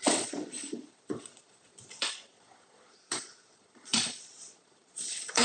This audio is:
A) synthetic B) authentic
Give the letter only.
A